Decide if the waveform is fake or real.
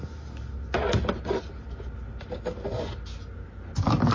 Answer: real